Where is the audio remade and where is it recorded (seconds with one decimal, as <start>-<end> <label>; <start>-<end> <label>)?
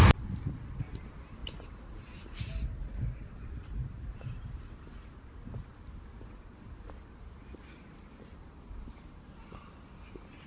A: 0.0-10.5 recorded